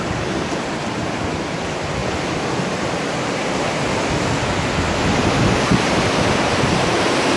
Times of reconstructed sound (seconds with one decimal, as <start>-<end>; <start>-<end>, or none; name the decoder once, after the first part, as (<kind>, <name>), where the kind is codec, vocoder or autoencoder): 2.0-2.6 (vocoder, BigVGAN v2); 5.2-6.7